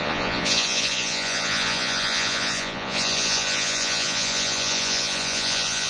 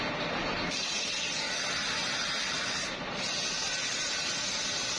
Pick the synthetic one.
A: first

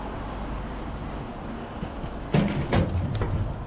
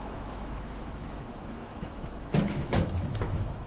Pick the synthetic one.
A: second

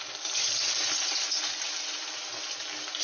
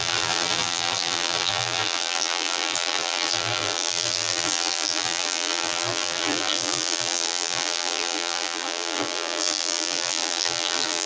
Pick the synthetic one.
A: second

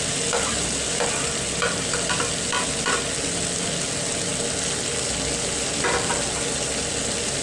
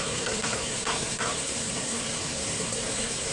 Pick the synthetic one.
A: second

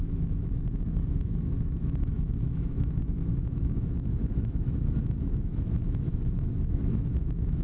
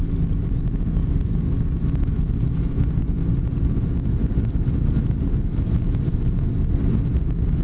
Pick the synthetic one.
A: first